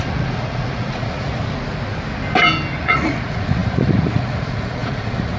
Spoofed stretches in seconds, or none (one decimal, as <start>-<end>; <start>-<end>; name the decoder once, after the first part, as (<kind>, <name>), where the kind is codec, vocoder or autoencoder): 0.0-1.4 (vocoder, Vocos); 2.8-5.4